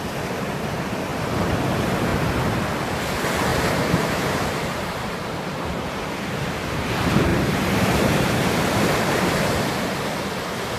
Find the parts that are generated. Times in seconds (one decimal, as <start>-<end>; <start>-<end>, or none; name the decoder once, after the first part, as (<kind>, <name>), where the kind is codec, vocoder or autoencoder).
3.5-5.6 (vocoder, BigVGAN v2); 7.3-9.2